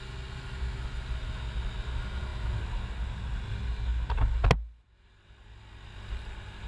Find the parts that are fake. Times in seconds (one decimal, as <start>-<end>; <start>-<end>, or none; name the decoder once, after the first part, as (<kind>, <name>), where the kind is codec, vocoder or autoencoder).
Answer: none